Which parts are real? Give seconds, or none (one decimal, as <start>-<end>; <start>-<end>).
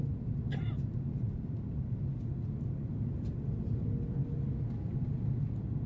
0.0-5.9